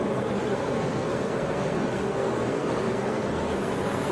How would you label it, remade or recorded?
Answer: remade